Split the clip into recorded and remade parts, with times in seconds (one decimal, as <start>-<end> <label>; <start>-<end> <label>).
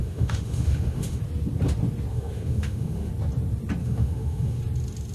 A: 0.0-1.2 remade; 1.2-2.1 recorded; 2.1-3.1 remade; 3.1-3.8 recorded; 3.8-4.6 remade; 4.6-5.1 recorded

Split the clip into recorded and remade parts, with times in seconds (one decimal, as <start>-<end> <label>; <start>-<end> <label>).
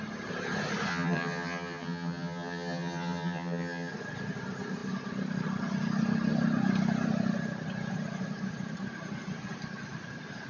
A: 0.0-0.9 recorded; 0.9-3.9 remade; 3.9-10.5 recorded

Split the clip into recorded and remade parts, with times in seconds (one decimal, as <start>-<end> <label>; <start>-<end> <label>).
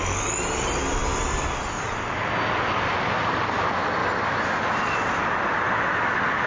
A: 0.0-6.5 recorded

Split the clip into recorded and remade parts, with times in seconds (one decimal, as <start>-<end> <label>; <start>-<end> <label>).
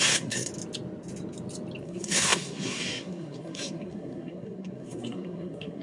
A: 0.0-0.5 remade; 0.5-1.8 recorded; 1.8-5.8 remade